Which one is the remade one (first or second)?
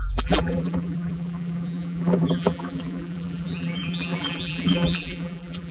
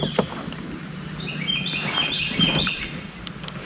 first